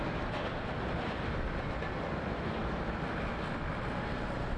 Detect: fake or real real